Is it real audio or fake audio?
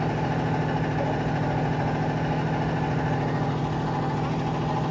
real